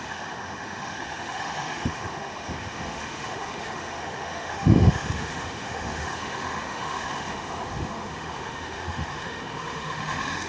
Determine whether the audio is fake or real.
fake